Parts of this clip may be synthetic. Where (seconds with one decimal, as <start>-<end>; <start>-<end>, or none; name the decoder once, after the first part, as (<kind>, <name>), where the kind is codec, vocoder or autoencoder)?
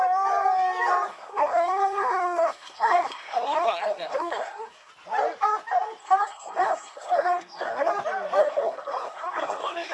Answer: 1.1-4.9 (codec, SNAC); 6.0-7.9; 8.4-9.9